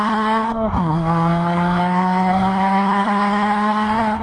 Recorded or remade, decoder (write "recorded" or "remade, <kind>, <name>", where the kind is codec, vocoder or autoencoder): remade, codec, SNAC